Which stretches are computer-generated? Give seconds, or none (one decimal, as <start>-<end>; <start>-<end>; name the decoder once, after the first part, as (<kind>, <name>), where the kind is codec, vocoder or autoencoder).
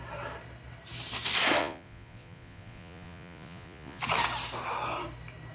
1.6-4.0 (vocoder, Vocos)